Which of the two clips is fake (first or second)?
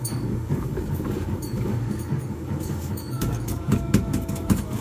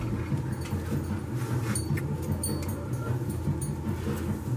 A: first